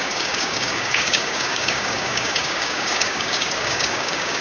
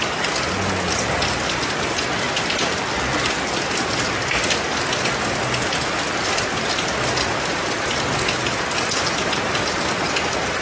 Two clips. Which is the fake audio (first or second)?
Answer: first